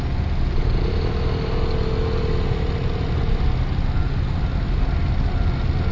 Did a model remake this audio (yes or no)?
no